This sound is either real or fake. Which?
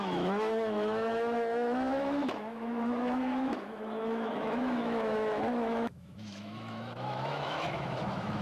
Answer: fake